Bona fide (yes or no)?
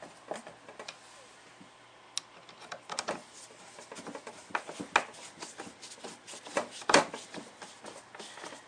yes